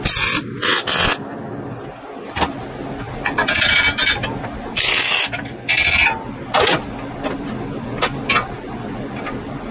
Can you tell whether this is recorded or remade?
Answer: recorded